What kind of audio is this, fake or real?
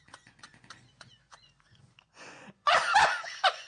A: fake